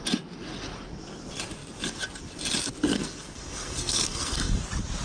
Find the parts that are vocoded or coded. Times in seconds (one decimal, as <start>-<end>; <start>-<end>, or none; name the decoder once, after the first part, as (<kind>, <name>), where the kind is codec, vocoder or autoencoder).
2.9-4.5 (codec, SNAC)